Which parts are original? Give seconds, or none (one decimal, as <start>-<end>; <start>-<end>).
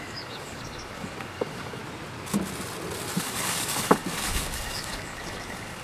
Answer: 1.8-3.2